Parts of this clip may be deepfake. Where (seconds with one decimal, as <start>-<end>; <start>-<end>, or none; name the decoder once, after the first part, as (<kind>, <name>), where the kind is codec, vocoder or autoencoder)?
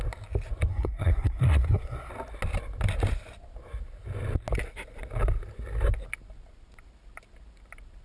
0.7-2.1 (codec, SNAC)